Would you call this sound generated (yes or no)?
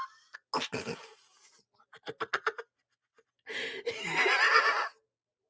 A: no